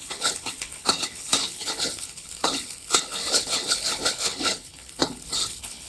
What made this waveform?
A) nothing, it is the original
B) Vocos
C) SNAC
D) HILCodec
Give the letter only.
D